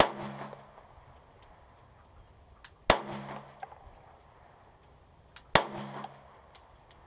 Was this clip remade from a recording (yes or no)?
no